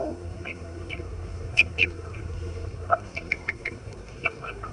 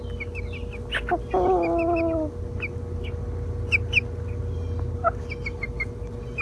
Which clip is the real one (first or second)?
second